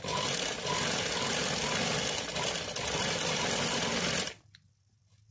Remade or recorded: recorded